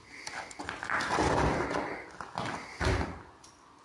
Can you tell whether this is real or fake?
real